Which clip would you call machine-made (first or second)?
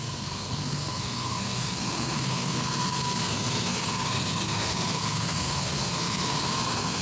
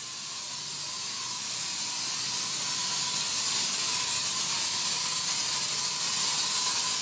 first